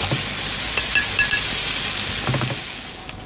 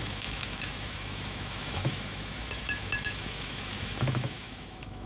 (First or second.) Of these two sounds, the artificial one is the second